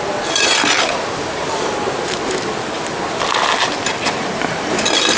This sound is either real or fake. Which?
real